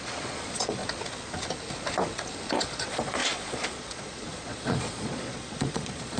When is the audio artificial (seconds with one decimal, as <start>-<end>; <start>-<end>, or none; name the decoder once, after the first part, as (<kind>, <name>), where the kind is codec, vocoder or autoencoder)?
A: 0.0-0.8 (vocoder, Vocos); 2.6-6.2

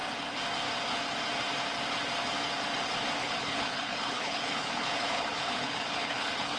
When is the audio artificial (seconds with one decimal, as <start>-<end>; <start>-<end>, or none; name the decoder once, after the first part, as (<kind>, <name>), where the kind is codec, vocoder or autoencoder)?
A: 3.2-6.6 (codec, HILCodec)